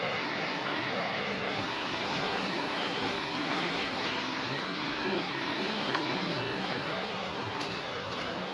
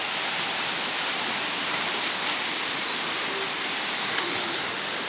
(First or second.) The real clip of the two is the second